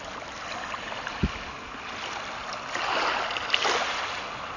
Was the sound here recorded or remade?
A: recorded